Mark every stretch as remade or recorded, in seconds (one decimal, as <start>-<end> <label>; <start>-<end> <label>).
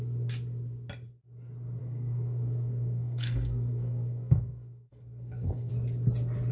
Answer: 0.0-1.8 recorded; 1.8-5.7 remade; 5.7-6.5 recorded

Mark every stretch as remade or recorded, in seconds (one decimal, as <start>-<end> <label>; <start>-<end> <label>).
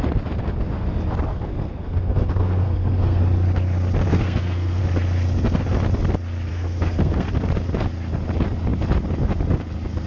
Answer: 0.0-1.3 recorded; 1.3-3.2 remade; 3.2-4.1 recorded; 4.1-4.8 remade; 4.8-6.5 recorded; 6.5-7.3 remade; 7.3-10.1 recorded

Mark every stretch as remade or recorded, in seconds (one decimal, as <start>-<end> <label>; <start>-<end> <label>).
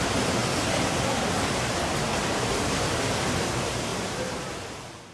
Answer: 0.0-5.1 recorded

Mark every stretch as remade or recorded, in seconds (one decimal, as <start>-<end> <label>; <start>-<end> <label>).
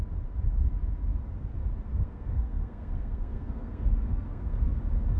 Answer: 0.0-1.9 recorded; 1.9-4.8 remade; 4.8-5.2 recorded